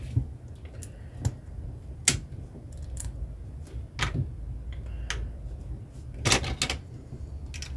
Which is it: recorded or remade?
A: recorded